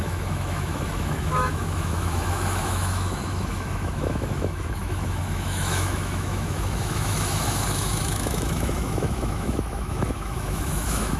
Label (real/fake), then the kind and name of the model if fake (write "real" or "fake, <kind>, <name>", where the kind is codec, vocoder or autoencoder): fake, autoencoder, DAC-VAE